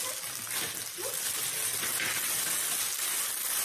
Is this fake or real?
real